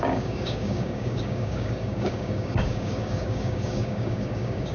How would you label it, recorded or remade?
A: remade